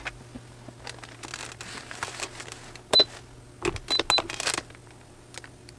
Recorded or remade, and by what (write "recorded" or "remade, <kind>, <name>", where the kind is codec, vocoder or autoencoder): recorded